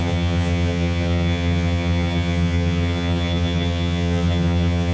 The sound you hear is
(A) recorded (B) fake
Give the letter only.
B